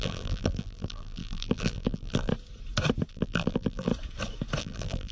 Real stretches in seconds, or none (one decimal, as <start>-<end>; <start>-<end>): 2.3-3.1; 3.9-4.6